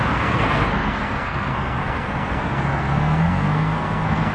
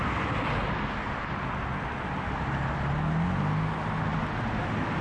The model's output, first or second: first